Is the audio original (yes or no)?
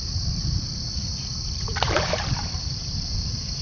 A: no